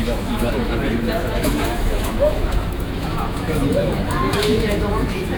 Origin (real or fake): fake